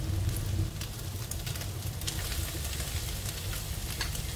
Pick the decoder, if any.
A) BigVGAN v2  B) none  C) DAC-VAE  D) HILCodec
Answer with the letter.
B